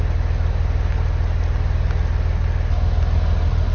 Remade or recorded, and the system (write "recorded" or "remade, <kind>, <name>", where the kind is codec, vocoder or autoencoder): recorded